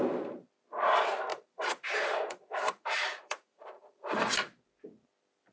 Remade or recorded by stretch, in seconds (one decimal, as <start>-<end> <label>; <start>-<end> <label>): 0.0-1.3 recorded; 1.3-4.6 remade; 4.6-5.5 recorded